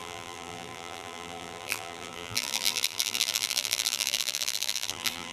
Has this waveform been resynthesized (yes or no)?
yes